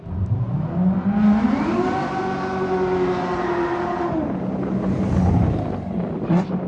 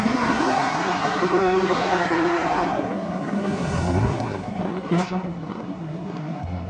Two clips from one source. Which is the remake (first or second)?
second